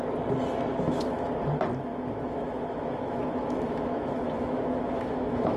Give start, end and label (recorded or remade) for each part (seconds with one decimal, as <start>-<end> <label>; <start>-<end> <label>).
0.0-0.7 recorded; 0.7-1.3 remade; 1.3-1.9 recorded; 1.9-5.6 remade